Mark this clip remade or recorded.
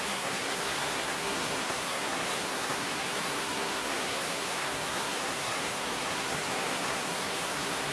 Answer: remade